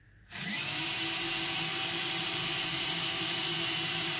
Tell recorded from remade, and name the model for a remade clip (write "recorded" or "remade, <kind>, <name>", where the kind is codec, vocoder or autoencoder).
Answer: remade, vocoder, BigVGAN v2